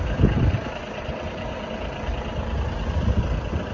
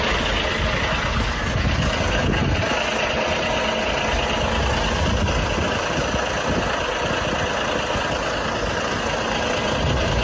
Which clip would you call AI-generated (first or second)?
first